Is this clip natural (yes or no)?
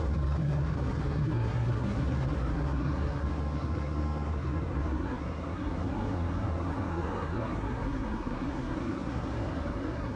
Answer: no